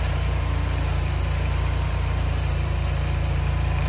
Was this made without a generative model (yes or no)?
no